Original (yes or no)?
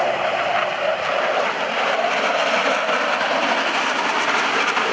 yes